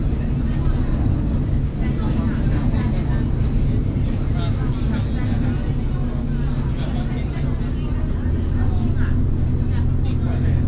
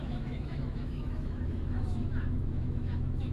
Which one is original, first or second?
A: first